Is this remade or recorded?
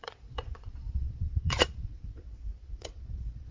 remade